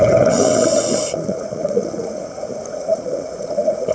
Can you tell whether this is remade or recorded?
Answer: remade